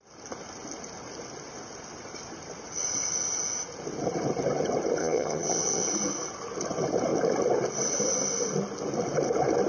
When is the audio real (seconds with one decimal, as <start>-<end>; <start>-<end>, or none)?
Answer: 0.0-5.0; 5.9-9.7